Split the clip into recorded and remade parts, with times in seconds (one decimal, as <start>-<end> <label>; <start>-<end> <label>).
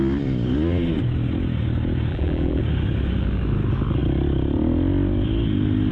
0.0-2.1 recorded; 2.1-2.6 remade; 2.6-5.9 recorded